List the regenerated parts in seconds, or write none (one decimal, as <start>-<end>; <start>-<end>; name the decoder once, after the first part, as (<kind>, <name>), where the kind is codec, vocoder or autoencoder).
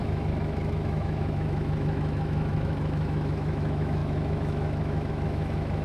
0.0-5.8 (autoencoder, DAC-VAE)